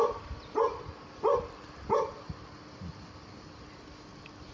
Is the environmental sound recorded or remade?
recorded